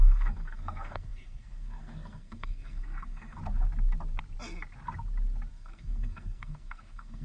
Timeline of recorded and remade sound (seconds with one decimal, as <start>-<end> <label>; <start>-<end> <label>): 0.0-3.4 remade; 3.4-5.5 recorded; 5.5-7.2 remade